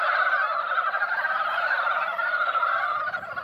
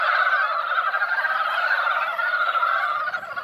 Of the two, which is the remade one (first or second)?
first